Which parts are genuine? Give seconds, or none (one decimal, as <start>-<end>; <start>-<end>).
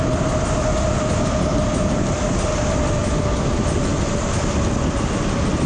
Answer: 0.0-5.7